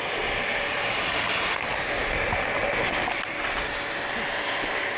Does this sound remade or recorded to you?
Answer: recorded